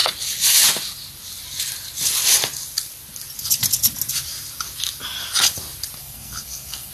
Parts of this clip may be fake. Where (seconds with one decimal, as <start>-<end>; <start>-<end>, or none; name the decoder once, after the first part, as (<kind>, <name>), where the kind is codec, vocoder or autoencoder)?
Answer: 6.0-6.9 (codec, SNAC)